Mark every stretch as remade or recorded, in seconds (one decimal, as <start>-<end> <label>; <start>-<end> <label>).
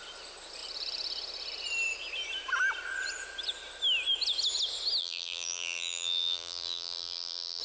0.0-5.0 recorded; 5.0-7.6 remade